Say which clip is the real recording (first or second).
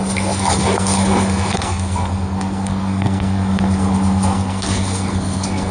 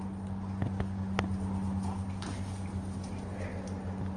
second